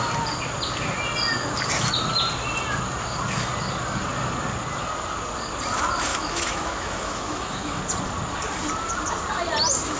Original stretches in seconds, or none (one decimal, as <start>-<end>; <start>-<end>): 0.0-6.1; 7.8-10.0